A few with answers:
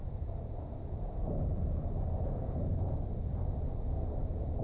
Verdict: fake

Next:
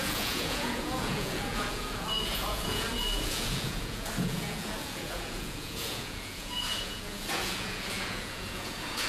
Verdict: fake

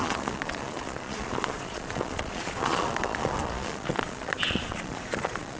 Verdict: fake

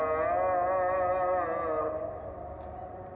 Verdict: real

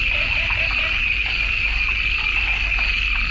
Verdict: real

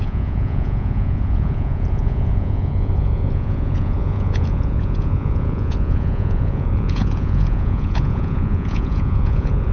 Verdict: fake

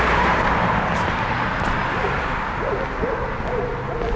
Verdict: real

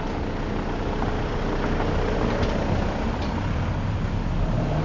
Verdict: real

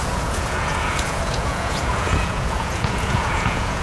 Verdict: fake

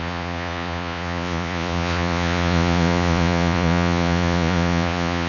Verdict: fake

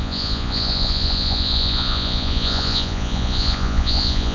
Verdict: fake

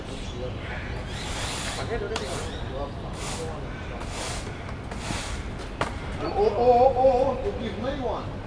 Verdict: real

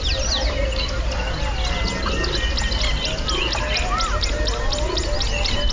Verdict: real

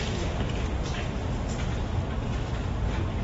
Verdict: real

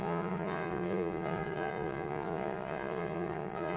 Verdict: fake